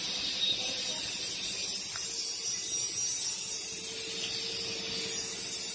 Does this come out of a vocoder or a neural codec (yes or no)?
no